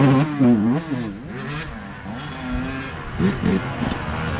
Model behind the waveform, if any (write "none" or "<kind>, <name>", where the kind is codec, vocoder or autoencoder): none